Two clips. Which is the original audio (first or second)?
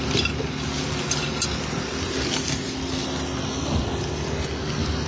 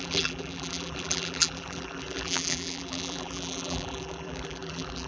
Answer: first